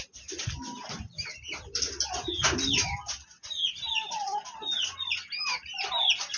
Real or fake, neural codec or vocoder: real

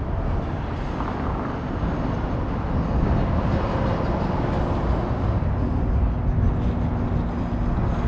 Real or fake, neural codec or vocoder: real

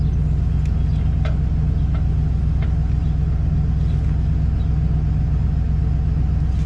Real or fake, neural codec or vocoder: real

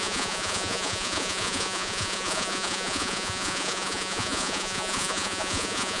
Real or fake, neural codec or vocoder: fake, vocoder, Vocos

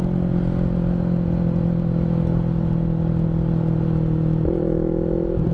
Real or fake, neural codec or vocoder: real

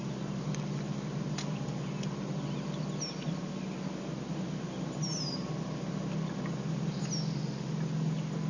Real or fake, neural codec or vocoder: real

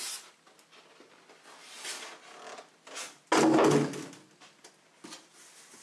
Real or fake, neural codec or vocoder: real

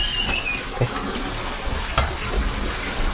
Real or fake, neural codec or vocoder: real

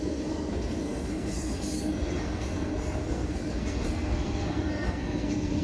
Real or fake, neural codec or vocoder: fake, codec, SNAC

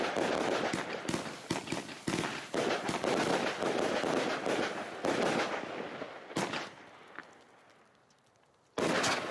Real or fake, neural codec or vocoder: real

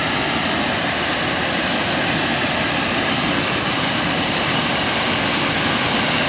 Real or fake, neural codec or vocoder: real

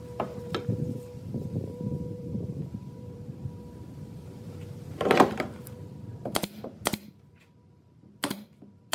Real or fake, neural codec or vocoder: fake, vocoder, BigVGAN v2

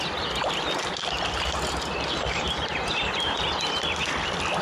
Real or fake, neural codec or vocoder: fake, vocoder, BigVGAN v2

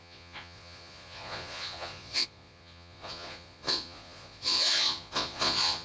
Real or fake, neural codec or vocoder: fake, vocoder, Vocos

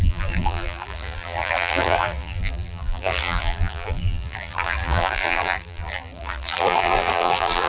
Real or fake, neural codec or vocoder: fake, vocoder, BigVGAN v2